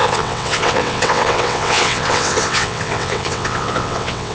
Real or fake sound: fake